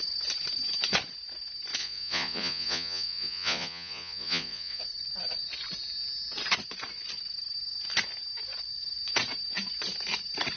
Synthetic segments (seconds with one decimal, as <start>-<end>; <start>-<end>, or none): 1.8-4.8